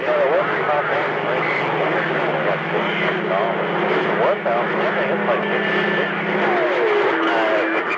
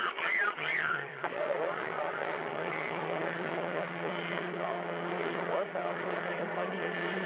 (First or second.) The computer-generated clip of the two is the second